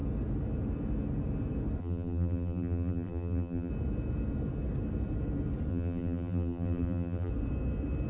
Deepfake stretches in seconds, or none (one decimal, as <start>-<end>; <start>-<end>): 1.8-3.7; 5.7-7.3